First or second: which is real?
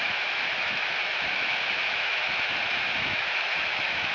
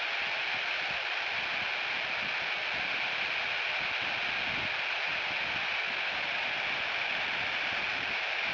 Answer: second